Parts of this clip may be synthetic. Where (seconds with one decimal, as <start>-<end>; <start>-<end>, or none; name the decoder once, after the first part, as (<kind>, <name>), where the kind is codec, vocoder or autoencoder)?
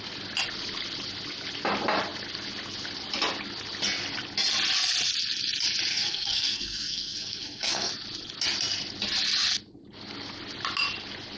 5.9-7.9 (codec, SNAC)